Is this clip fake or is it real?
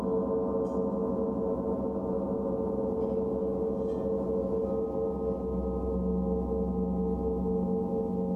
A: real